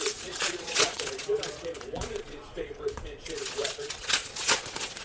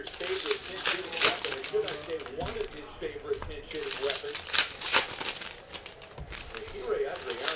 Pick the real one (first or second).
second